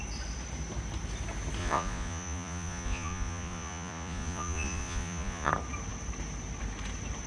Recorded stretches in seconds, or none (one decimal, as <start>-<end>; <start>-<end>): 0.0-1.6; 5.5-7.3